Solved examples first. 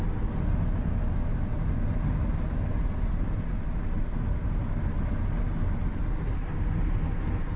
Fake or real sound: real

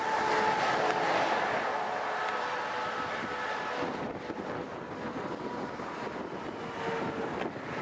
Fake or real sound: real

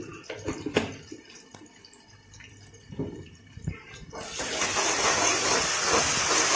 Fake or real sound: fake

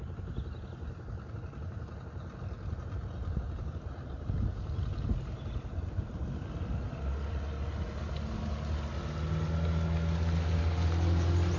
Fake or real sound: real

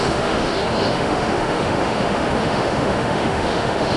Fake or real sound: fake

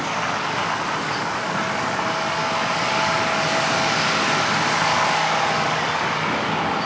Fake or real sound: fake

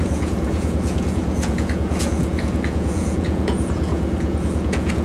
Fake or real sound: fake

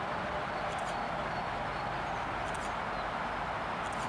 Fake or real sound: real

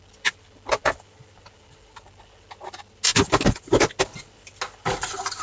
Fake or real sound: real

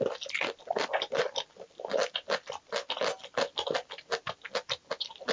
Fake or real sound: real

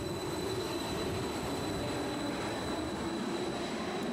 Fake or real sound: real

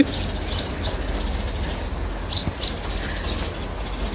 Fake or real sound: real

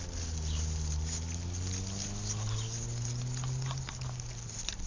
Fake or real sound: real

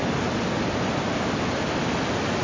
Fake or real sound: real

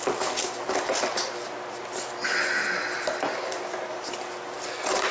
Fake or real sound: real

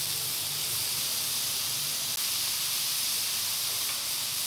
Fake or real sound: real